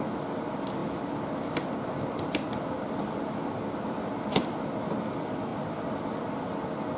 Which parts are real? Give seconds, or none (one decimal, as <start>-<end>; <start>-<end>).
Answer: 0.0-7.0